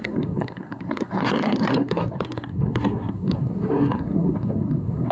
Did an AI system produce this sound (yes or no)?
yes